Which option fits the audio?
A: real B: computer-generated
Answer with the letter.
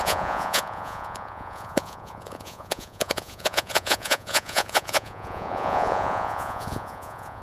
B